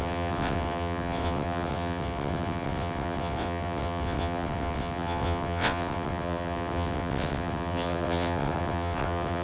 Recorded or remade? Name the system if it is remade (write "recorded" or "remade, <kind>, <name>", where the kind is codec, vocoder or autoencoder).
remade, vocoder, WaveNeXt